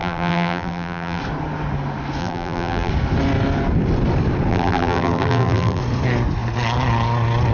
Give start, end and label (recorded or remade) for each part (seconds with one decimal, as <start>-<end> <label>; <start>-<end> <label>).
0.0-1.2 remade; 1.2-2.2 recorded; 2.2-2.9 remade; 2.9-4.5 recorded; 4.5-5.8 remade; 5.8-7.5 recorded